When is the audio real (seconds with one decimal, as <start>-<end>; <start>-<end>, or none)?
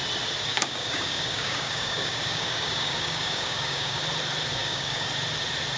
0.0-0.5; 4.0-4.6; 5.1-5.8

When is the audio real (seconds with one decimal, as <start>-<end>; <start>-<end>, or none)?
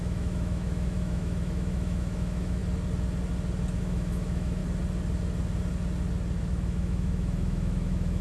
2.6-3.8; 4.6-6.4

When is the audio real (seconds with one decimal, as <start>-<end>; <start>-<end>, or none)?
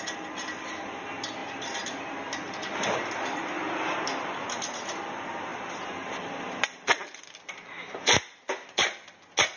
0.0-9.6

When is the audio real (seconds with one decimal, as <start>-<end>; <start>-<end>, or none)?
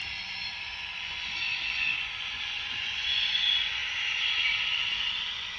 0.0-0.6; 3.8-5.1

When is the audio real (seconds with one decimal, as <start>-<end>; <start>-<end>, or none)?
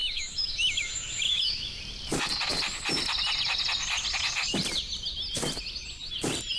1.8-6.6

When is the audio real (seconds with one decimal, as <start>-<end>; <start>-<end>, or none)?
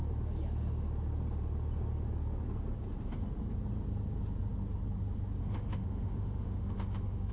0.0-5.4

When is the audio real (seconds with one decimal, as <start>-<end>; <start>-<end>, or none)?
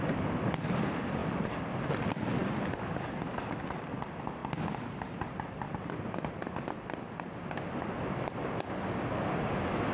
0.0-1.2; 1.9-2.4; 3.3-4.4; 6.5-9.9